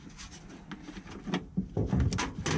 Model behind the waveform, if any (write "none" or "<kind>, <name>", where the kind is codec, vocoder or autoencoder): none